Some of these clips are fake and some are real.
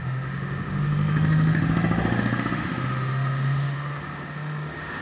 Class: fake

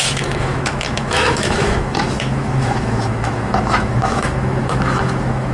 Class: fake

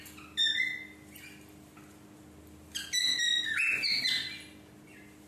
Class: real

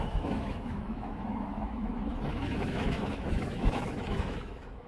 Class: fake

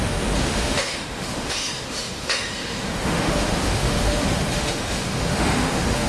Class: fake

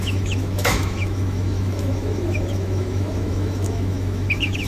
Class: fake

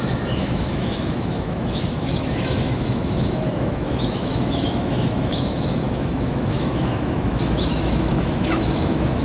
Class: fake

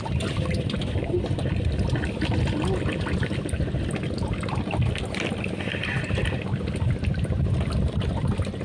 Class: real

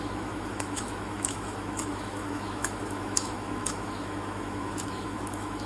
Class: fake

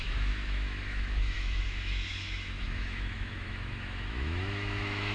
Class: fake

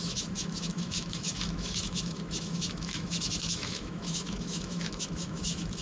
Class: fake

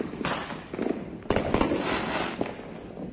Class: real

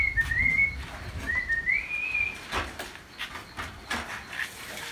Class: real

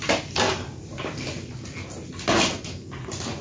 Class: real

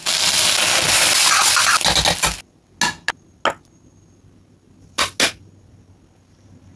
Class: real